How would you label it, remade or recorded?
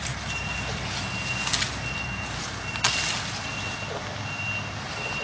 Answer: recorded